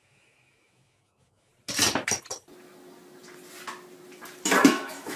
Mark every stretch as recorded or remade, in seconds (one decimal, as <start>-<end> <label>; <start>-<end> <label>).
0.0-1.5 remade; 1.5-4.6 recorded; 4.6-5.2 remade